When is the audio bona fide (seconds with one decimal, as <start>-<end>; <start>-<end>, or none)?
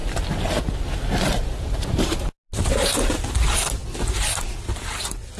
0.0-5.4